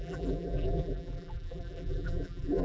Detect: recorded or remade remade